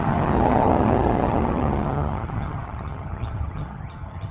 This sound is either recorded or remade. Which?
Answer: remade